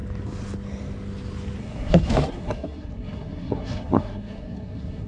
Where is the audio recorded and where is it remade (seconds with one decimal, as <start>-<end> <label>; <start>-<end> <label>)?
0.0-1.6 recorded; 1.6-5.1 remade